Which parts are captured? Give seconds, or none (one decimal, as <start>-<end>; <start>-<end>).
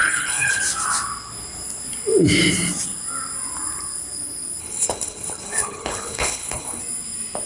0.6-4.6; 6.8-7.5